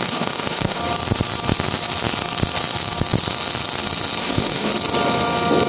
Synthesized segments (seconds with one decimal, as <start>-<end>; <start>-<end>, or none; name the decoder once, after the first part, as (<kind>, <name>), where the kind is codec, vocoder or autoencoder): 0.0-0.8 (autoencoder, DAC-VAE); 4.2-4.7